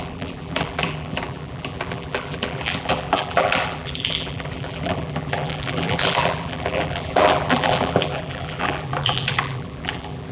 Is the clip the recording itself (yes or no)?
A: no